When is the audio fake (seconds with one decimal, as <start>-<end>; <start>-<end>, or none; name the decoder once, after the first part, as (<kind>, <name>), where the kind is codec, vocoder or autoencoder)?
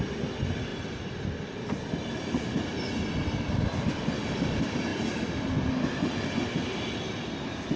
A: none